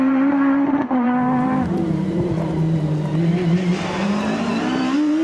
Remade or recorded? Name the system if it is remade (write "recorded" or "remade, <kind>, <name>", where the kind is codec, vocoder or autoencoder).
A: remade, vocoder, BigVGAN v2